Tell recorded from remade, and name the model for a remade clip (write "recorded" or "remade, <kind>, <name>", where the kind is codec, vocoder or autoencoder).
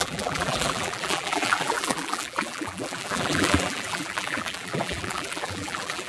remade, vocoder, BigVGAN v2